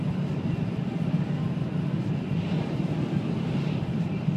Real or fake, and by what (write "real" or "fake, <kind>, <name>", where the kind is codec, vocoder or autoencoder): real